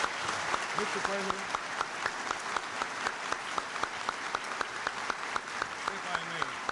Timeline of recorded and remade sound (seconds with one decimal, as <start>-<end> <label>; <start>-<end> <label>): 0.0-6.7 recorded